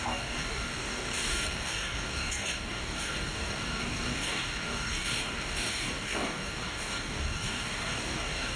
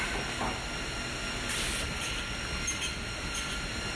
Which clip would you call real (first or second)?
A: second